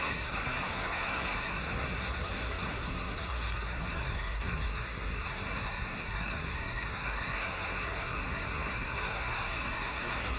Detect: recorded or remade remade